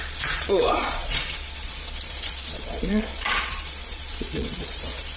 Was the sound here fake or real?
fake